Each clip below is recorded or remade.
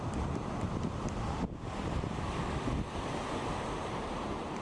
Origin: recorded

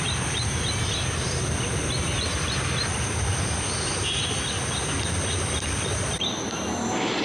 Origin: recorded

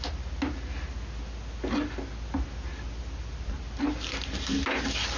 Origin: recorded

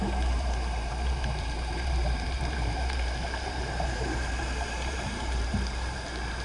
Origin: remade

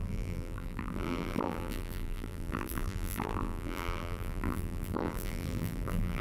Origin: remade